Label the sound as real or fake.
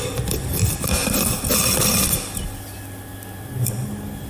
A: real